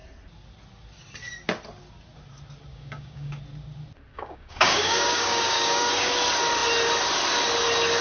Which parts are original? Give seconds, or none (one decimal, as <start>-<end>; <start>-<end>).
0.0-2.7; 3.4-4.1; 6.1-8.0